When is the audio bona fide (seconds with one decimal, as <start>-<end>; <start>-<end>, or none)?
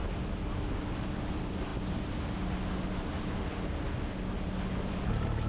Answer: 0.0-5.5